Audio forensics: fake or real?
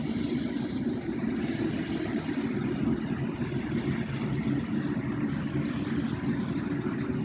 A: real